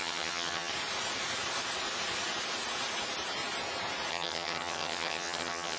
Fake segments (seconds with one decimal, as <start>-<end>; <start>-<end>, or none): 0.0-0.7; 4.1-5.8